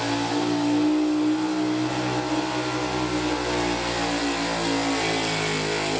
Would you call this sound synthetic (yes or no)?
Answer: no